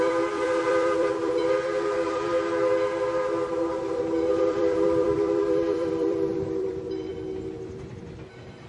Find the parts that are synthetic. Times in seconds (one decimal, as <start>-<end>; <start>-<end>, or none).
0.0-2.3; 4.4-7.1